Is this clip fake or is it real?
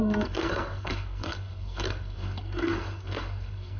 fake